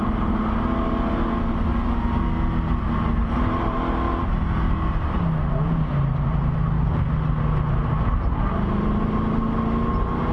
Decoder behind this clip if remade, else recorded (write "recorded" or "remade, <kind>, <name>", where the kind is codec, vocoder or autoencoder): recorded